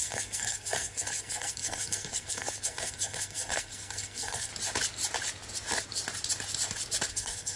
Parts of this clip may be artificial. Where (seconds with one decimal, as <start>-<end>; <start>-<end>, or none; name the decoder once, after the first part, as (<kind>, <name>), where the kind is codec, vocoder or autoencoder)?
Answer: 0.0-4.5 (codec, SNAC); 7.1-7.6